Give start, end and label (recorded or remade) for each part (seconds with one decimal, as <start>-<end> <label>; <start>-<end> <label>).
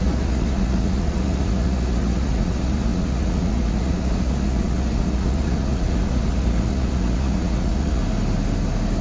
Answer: 0.0-8.0 remade; 8.0-9.0 recorded